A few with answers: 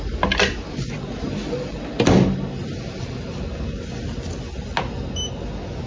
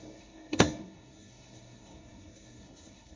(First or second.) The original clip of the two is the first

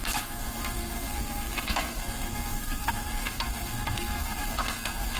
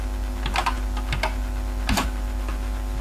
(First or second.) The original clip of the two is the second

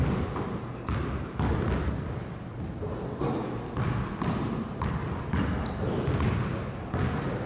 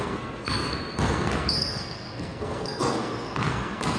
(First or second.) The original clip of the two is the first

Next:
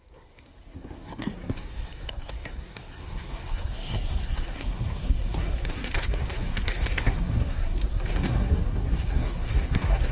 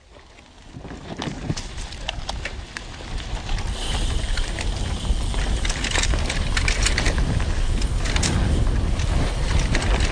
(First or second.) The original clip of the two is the second